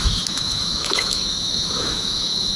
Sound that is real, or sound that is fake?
fake